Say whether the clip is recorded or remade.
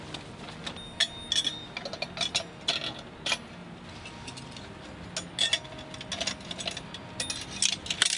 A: recorded